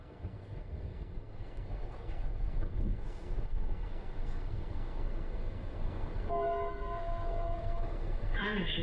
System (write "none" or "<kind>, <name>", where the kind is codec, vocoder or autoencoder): codec, SNAC